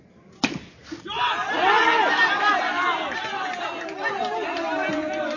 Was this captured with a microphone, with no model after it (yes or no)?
yes